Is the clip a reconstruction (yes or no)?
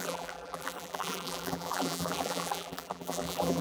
yes